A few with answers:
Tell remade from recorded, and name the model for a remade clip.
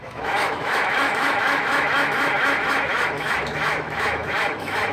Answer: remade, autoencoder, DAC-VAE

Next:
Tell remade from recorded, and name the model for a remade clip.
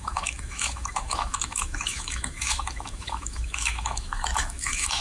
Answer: remade, autoencoder, DAC-VAE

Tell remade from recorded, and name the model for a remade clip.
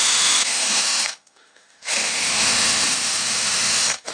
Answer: remade, autoencoder, DAC-VAE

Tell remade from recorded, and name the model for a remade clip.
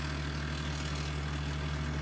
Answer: recorded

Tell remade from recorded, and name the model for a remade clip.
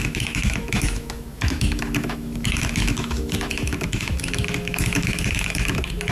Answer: remade, autoencoder, DAC-VAE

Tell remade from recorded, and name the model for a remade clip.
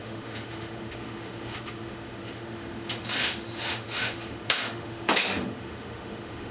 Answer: remade, autoencoder, DAC-VAE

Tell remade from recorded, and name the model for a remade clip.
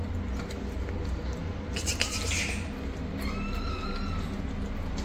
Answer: recorded